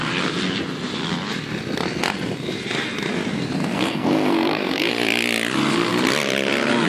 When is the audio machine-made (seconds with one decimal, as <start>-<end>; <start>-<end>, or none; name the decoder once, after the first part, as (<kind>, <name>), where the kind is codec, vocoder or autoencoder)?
3.6-4.9 (codec, SNAC)